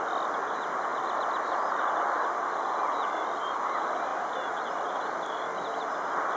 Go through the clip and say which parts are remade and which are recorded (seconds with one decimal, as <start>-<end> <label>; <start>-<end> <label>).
0.0-6.4 recorded